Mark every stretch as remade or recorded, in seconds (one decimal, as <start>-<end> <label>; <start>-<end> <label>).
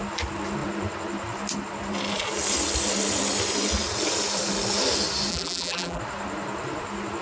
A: 0.0-5.3 recorded; 5.3-6.0 remade; 6.0-7.2 recorded